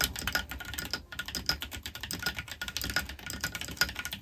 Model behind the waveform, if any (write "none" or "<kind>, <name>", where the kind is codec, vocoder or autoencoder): none